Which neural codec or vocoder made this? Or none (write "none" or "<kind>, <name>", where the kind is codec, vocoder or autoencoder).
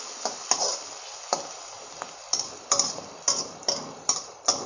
none